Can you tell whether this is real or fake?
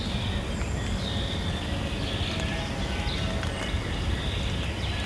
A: real